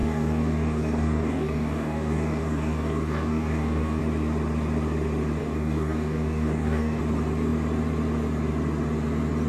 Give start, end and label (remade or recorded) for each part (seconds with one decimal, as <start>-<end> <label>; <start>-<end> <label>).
0.0-4.0 remade; 4.0-5.4 recorded; 5.4-7.0 remade; 7.0-9.5 recorded